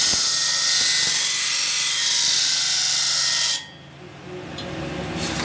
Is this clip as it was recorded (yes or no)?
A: yes